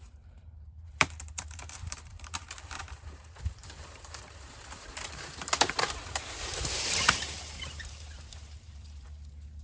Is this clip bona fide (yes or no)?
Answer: no